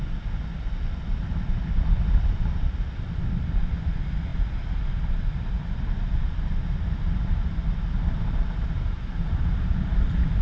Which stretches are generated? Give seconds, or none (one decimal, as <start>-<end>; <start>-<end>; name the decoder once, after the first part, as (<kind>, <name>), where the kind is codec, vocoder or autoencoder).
none